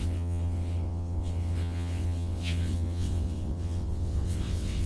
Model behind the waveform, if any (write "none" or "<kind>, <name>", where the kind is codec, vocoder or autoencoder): vocoder, WaveNeXt